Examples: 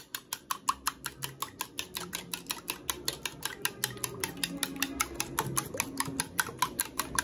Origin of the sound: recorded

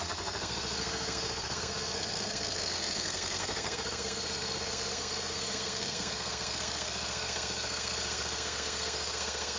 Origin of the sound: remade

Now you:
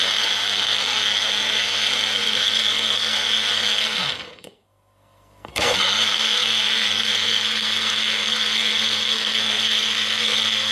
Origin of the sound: remade